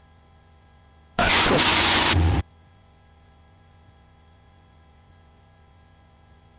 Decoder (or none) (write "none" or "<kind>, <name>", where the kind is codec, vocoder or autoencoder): vocoder, Vocos